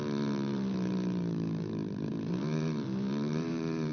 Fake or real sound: fake